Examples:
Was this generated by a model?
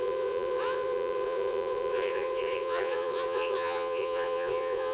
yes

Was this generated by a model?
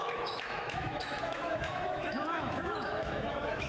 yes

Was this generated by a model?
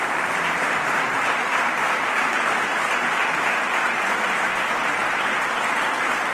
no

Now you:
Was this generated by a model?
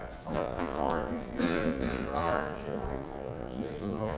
yes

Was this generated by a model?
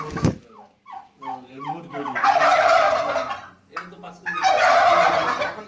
no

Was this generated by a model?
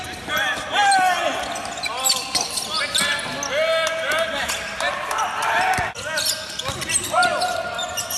no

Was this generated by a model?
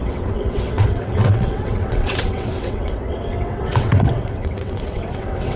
yes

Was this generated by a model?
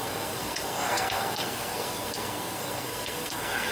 yes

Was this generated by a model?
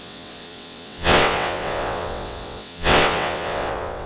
yes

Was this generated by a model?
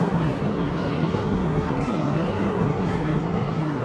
yes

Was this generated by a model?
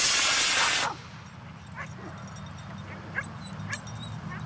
no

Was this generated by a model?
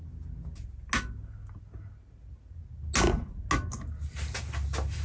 no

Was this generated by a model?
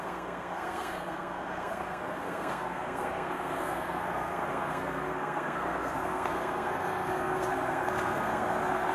yes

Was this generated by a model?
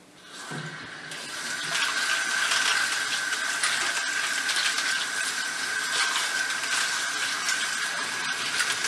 no